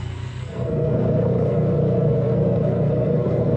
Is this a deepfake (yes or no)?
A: yes